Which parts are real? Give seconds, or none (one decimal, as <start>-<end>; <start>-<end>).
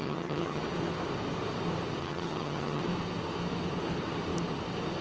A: 0.6-2.0; 2.8-5.0